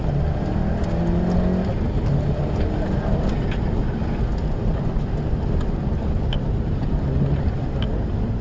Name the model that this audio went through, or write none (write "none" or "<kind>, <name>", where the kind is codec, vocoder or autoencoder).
none